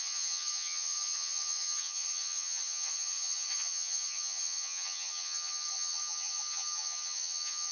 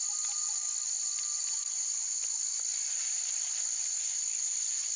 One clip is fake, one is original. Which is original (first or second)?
second